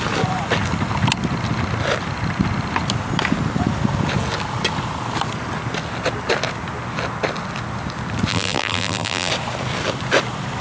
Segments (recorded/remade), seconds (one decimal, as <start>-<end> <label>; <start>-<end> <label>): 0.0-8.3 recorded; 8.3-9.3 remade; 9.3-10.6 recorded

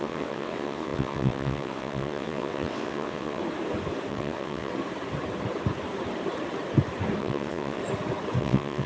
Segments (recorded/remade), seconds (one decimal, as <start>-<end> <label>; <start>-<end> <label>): 0.0-3.4 remade; 3.4-4.1 recorded; 4.1-4.7 remade; 4.7-7.2 recorded; 7.2-7.8 remade; 7.8-8.4 recorded; 8.4-8.9 remade

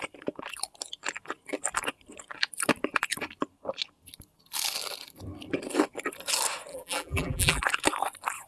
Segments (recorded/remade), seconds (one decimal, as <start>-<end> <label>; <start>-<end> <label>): 0.0-6.7 recorded; 6.7-7.6 remade; 7.6-8.5 recorded

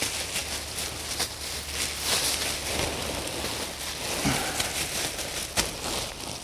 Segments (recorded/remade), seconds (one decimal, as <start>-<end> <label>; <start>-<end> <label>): 0.0-6.4 recorded